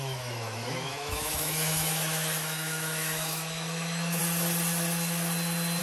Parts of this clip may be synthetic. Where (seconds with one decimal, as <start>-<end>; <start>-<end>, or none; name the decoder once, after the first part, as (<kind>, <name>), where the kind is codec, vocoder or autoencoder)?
0.0-4.2 (autoencoder, DAC-VAE)